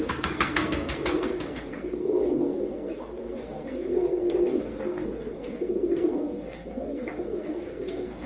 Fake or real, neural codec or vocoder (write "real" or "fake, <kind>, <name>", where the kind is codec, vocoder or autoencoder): fake, codec, SNAC